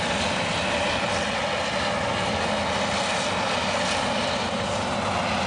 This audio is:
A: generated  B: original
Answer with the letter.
B